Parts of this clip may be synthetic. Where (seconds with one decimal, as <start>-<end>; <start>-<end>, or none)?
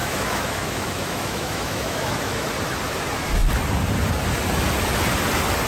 0.0-2.5